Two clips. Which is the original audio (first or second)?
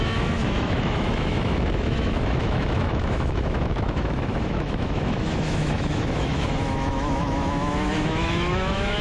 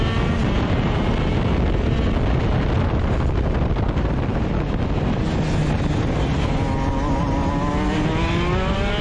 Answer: second